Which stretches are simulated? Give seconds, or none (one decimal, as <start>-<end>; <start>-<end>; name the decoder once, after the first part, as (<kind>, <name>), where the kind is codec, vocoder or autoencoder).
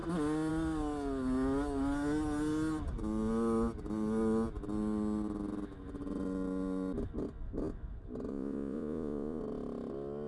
8.3-9.4 (vocoder, Vocos)